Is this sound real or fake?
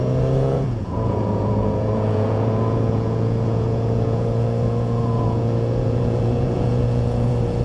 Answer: fake